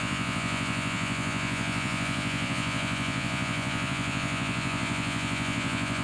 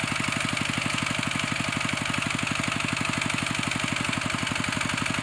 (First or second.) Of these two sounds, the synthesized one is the first